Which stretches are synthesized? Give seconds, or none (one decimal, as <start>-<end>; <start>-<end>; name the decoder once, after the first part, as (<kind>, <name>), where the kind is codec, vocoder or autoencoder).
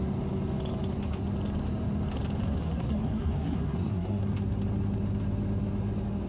2.4-4.2 (codec, SNAC)